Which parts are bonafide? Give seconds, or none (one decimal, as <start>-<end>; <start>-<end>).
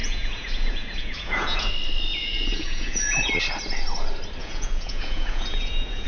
1.7-2.1; 3.3-4.4